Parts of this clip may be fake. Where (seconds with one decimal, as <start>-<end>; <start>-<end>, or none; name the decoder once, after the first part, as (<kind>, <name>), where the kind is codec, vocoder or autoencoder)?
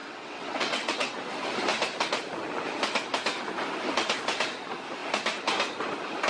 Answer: 0.0-1.2 (vocoder, WaveNeXt)